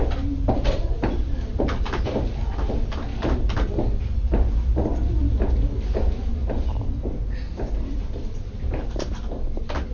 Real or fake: real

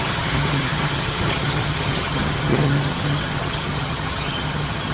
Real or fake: fake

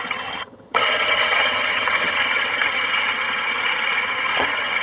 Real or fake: fake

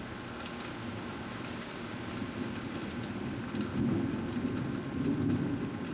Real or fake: real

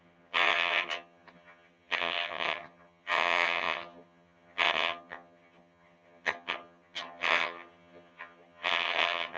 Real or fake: fake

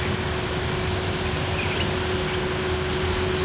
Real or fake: real